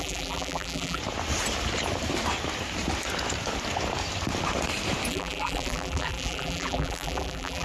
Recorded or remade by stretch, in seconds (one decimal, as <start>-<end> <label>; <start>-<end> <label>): 0.0-1.0 remade; 1.0-5.1 recorded; 5.1-7.6 remade